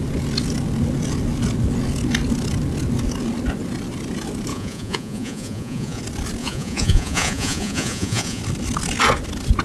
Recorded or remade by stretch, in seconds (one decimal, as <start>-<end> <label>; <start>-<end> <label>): 0.0-4.5 recorded; 4.5-6.0 remade; 6.0-6.4 recorded; 6.4-8.4 remade; 8.4-9.6 recorded